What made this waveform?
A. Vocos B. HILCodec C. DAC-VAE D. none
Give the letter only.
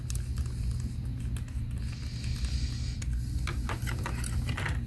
D